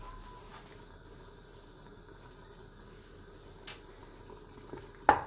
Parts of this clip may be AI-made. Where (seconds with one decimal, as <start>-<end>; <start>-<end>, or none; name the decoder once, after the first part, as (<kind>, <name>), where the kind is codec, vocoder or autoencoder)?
none